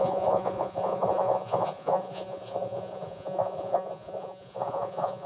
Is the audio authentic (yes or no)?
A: no